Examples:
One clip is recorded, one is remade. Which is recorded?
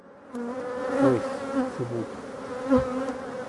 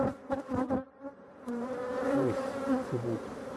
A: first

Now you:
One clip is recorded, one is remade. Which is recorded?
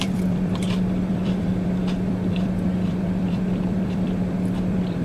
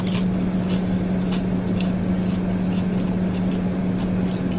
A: second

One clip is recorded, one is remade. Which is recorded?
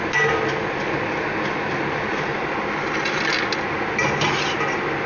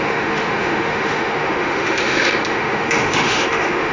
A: first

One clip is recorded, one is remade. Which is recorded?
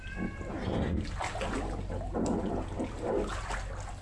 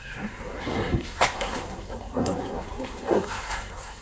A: first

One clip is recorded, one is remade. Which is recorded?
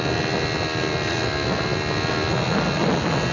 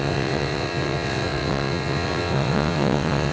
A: first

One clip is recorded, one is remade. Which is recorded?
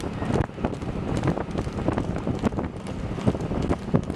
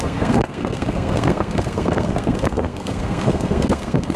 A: first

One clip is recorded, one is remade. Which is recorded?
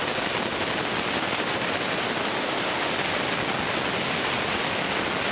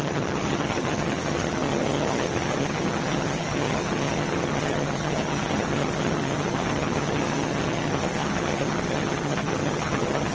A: first